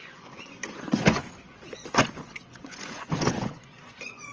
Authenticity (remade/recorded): remade